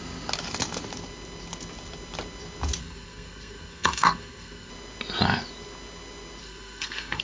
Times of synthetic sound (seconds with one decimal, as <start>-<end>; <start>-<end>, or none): 2.8-4.7; 6.4-7.2